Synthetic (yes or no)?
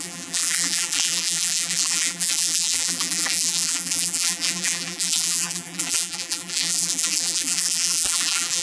yes